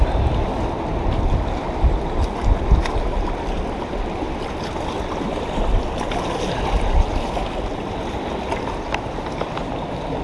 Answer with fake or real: real